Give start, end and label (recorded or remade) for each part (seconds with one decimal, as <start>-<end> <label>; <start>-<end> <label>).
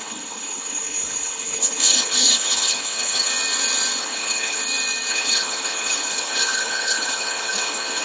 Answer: 0.0-3.3 remade; 3.3-4.0 recorded; 4.0-4.6 remade; 4.6-5.1 recorded; 5.1-8.0 remade